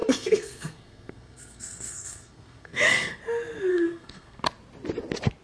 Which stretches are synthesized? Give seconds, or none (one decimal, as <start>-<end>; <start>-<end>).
0.0-3.2; 3.7-4.4